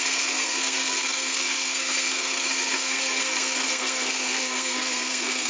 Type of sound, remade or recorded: remade